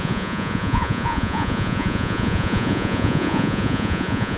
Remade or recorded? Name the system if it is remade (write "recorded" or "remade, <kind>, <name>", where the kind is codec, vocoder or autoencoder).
remade, vocoder, Vocos